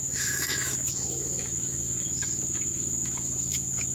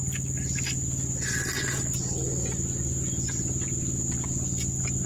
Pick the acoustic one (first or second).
second